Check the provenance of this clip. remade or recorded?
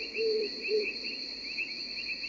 remade